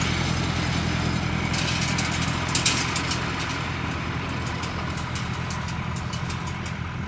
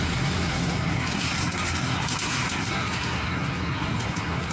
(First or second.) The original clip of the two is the first